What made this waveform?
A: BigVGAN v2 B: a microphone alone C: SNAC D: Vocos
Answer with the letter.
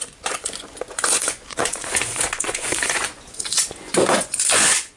D